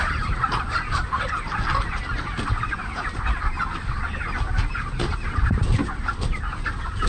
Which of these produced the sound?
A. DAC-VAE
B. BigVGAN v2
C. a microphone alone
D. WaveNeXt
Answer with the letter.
C